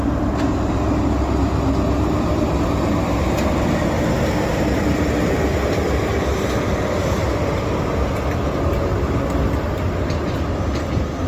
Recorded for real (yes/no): yes